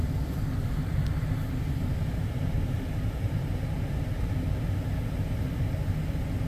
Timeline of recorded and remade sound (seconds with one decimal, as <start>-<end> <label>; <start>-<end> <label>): 0.0-3.5 remade; 3.5-6.5 recorded